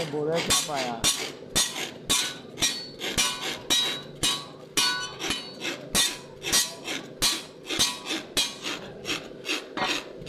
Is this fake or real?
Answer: real